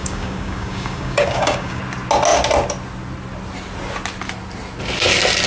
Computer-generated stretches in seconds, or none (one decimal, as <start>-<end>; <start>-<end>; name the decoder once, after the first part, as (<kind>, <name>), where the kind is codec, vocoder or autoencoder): 0.0-1.8 (codec, DAC)